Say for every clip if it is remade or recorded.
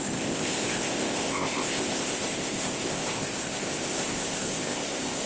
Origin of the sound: remade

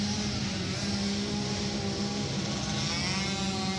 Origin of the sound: recorded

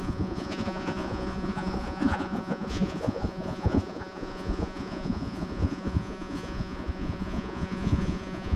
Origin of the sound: remade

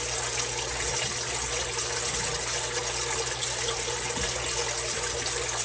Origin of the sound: recorded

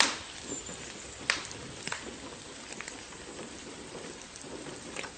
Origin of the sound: remade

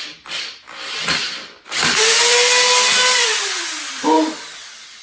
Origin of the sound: recorded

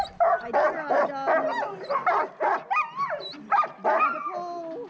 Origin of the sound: recorded